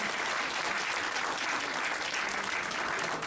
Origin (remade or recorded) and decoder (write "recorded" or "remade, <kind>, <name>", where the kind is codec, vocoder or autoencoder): recorded